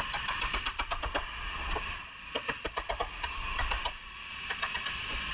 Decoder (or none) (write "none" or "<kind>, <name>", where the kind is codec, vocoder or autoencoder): none